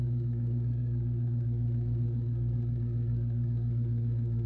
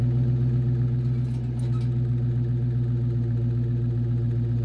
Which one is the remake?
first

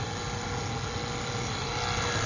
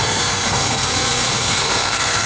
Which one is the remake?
second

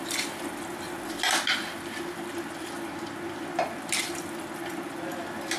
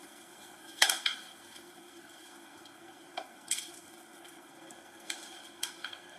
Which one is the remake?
second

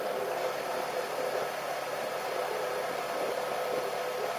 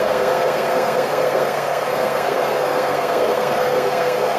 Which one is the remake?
second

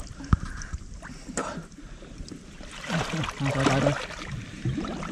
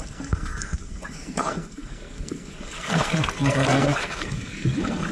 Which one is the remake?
second